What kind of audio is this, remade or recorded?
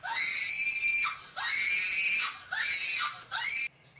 recorded